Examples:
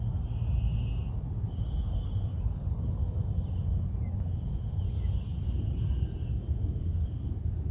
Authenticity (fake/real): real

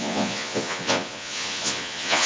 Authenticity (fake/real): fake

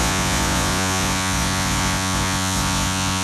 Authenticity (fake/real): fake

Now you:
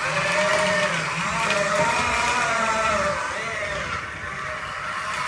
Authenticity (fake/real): real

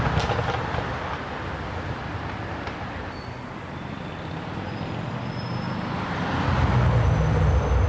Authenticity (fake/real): real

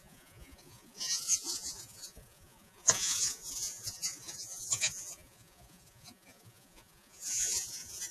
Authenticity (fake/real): fake